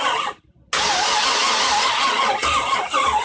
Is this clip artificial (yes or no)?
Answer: no